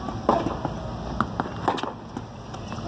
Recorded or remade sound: recorded